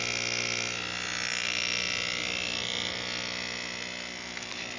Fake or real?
real